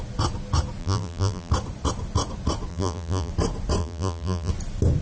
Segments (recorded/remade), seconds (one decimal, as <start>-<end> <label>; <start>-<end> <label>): 0.0-0.8 recorded; 0.8-1.5 remade; 1.5-2.7 recorded; 2.7-3.3 remade; 3.3-3.8 recorded; 3.8-4.5 remade; 4.5-5.0 recorded